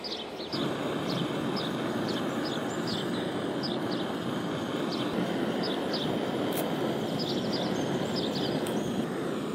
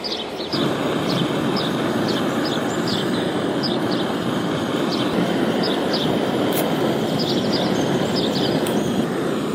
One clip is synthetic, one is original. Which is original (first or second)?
first